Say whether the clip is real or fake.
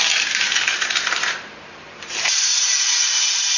fake